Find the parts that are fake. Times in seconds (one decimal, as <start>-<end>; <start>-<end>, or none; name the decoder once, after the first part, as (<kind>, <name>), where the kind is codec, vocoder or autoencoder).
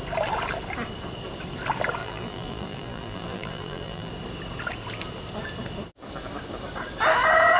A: 2.0-4.1 (vocoder, BigVGAN v2)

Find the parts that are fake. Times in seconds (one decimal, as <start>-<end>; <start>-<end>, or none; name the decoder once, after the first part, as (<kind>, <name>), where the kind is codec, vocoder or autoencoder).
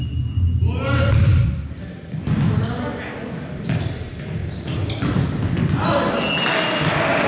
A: 4.4-5.3 (vocoder, BigVGAN v2)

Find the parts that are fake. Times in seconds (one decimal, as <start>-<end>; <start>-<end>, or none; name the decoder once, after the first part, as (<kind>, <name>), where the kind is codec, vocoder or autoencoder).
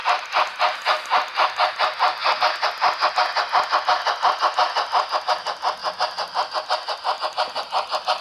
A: none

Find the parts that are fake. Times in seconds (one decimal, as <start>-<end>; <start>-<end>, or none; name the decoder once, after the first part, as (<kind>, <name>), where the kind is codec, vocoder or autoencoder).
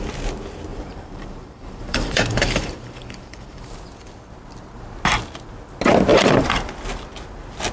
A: 0.7-3.7 (vocoder, BigVGAN v2); 6.1-6.7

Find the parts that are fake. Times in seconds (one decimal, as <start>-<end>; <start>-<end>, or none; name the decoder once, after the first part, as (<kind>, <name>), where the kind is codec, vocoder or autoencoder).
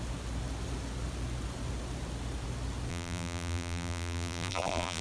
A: 2.9-5.0 (vocoder, BigVGAN v2)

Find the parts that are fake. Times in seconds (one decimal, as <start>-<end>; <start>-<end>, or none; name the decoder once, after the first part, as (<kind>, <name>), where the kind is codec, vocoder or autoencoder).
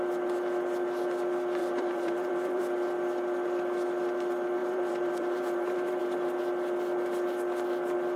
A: 1.6-2.6 (vocoder, BigVGAN v2); 4.6-6.0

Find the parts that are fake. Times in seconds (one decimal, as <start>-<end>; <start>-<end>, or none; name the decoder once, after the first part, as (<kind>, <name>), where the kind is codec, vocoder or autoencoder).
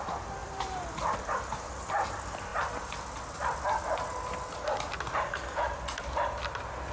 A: 0.4-1.7 (vocoder, BigVGAN v2)